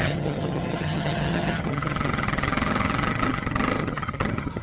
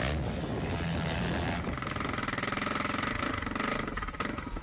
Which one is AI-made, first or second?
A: first